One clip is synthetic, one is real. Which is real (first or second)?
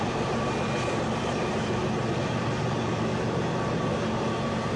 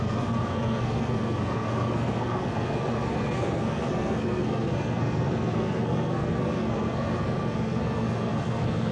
first